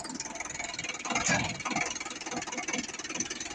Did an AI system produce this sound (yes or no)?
no